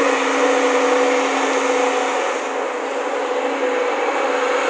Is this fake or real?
real